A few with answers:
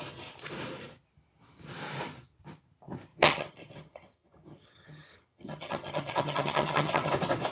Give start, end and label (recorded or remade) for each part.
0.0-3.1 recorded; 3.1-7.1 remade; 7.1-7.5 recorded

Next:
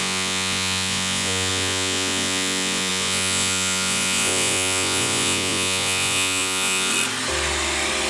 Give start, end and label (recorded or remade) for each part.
0.0-6.9 remade; 6.9-8.1 recorded

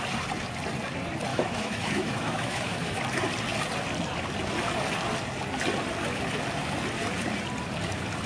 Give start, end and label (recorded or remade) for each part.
0.0-1.3 recorded; 1.3-3.0 remade; 3.0-8.3 recorded

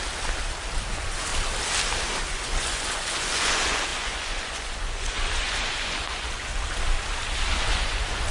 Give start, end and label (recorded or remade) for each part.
0.0-0.9 recorded; 0.9-1.3 remade; 1.3-2.3 recorded; 2.3-6.5 remade; 6.5-7.5 recorded; 7.5-8.3 remade

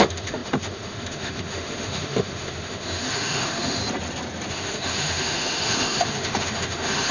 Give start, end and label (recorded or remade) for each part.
0.0-3.8 remade; 3.8-4.5 recorded; 4.5-7.1 remade

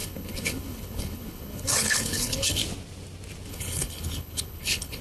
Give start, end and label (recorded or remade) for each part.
0.0-2.6 remade; 2.6-3.5 recorded; 3.5-5.0 remade